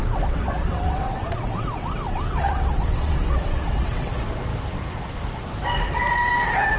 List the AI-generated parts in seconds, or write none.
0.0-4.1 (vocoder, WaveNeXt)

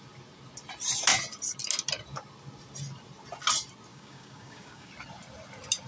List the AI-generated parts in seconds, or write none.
3.9-4.9 (codec, DAC)

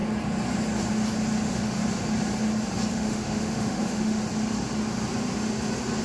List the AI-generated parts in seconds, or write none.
1.4-1.8 (autoencoder, DAC-VAE); 2.9-4.2

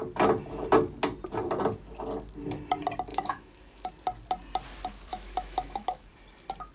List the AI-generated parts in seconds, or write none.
3.1-3.9 (autoencoder, DAC-VAE); 5.1-6.1

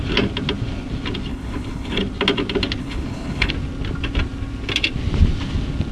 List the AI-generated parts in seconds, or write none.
1.3-2.0 (codec, HILCodec); 2.8-3.5

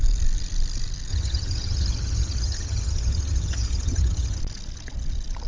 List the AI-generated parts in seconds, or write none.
1.1-4.4 (vocoder, HiFi-GAN)

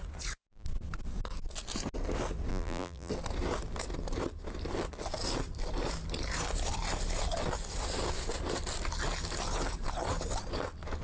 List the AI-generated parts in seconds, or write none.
2.5-3.1 (vocoder, BigVGAN v2)

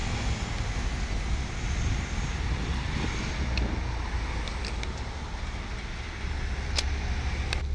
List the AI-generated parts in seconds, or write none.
none